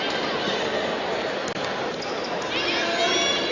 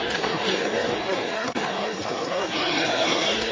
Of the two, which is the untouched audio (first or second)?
first